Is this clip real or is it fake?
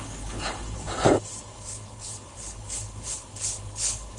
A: fake